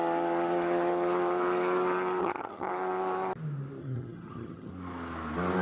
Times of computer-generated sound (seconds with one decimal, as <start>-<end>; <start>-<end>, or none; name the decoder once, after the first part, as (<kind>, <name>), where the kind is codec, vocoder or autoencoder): 2.2-2.7 (vocoder, HiFi-GAN); 3.8-4.7